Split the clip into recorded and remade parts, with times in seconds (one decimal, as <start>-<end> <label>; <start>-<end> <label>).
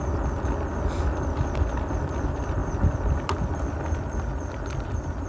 0.0-5.3 recorded